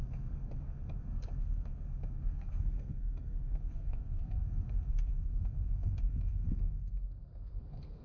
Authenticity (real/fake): fake